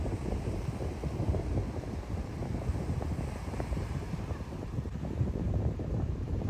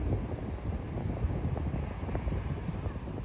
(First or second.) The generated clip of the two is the first